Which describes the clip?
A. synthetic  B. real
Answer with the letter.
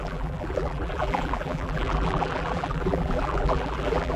A